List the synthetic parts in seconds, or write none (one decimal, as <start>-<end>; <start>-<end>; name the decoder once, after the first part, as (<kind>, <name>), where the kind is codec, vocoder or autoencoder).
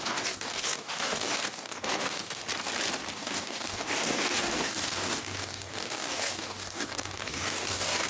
0.0-2.4 (codec, DAC); 3.1-8.1